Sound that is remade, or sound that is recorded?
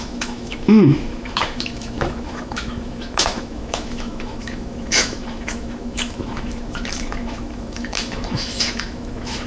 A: remade